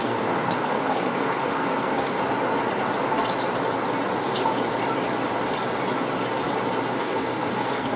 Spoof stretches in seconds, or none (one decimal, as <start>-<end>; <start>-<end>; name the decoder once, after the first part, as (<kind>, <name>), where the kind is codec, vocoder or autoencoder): 0.0-2.2 (codec, SNAC); 7.0-8.0